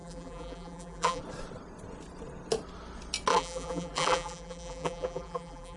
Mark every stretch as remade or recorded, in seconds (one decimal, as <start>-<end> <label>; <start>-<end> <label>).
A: 0.0-1.2 remade; 1.2-3.3 recorded; 3.3-5.8 remade